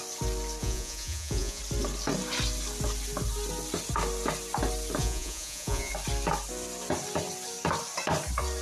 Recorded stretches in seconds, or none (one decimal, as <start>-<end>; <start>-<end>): 0.0-0.6; 1.6-5.0; 5.9-8.6